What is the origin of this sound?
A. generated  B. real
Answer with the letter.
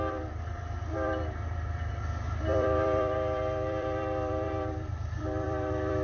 A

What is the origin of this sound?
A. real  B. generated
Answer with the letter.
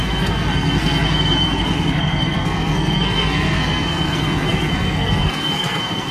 B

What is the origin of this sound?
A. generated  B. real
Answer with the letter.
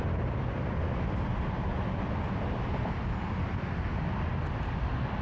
B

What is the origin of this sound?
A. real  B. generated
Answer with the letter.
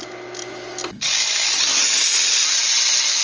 A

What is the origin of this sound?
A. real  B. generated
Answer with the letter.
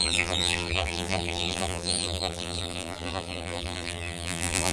B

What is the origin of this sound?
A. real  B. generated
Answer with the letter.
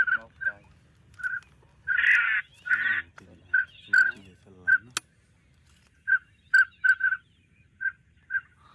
A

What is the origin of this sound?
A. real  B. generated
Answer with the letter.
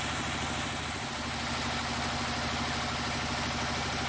A